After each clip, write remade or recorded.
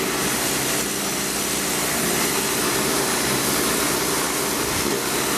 recorded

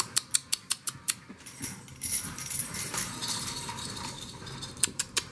remade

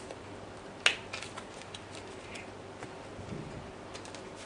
recorded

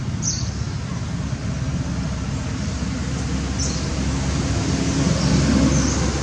recorded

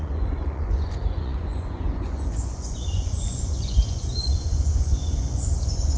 remade